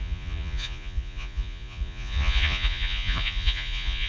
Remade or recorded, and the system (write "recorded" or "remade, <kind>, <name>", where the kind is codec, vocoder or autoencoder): remade, vocoder, Vocos